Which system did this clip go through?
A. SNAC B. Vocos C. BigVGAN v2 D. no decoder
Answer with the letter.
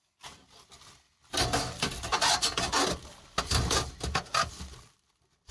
D